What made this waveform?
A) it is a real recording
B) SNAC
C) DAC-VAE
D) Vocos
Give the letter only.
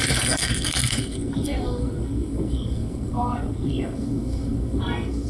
B